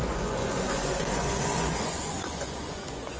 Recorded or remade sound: remade